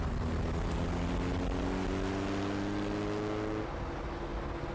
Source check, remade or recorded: recorded